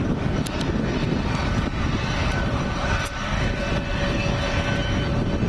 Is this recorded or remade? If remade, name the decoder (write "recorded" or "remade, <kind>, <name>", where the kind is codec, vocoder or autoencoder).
recorded